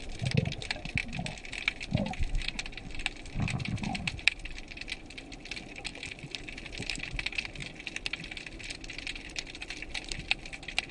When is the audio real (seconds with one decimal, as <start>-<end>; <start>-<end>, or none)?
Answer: 1.0-1.7; 7.6-9.4